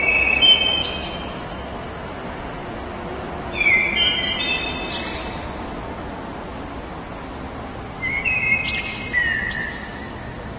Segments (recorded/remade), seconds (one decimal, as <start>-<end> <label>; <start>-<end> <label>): 0.0-0.8 recorded; 0.8-2.1 remade; 2.1-9.6 recorded; 9.6-10.2 remade; 10.2-10.6 recorded